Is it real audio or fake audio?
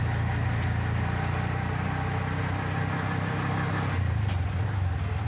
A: real